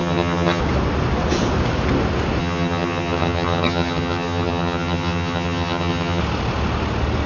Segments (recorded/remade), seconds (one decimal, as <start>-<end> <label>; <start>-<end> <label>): 0.0-0.6 remade; 0.6-2.4 recorded; 2.4-6.2 remade; 6.2-7.3 recorded